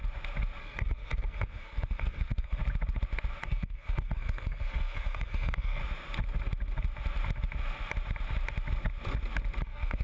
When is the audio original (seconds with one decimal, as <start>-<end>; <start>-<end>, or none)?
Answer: 0.0-0.6; 2.6-3.4; 5.8-9.6